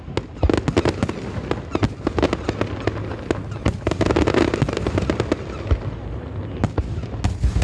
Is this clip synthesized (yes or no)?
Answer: no